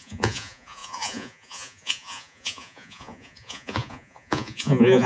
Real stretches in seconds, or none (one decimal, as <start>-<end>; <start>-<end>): none